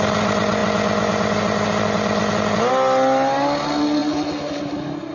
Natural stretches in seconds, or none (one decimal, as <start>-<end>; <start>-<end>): 0.0-5.1